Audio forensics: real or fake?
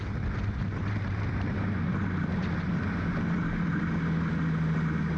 real